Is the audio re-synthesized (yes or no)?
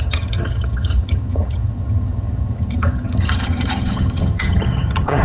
yes